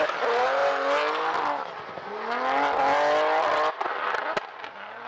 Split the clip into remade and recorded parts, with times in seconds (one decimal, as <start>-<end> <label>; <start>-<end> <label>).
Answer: 0.0-5.1 recorded